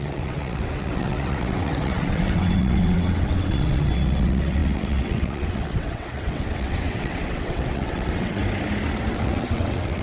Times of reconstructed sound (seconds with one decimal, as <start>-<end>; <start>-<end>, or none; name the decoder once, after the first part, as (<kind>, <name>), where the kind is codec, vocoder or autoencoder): 0.0-8.4 (vocoder, WaveNeXt); 9.1-10.0